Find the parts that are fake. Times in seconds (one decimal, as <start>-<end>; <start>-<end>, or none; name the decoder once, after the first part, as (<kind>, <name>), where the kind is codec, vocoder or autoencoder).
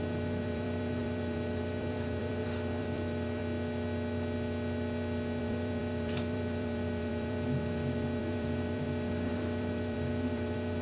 0.0-3.4 (vocoder, BigVGAN v2); 5.4-10.8